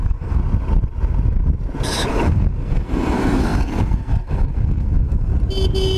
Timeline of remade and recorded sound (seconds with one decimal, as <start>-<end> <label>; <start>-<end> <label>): 0.0-0.4 remade; 0.4-2.1 recorded; 2.1-5.3 remade; 5.3-6.0 recorded